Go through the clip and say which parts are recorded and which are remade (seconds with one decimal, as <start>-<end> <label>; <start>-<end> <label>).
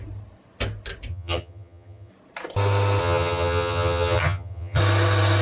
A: 0.0-1.1 recorded; 1.1-2.1 remade; 2.1-3.0 recorded; 3.0-4.8 remade; 4.8-5.4 recorded